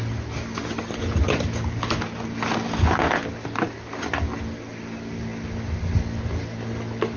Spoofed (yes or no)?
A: no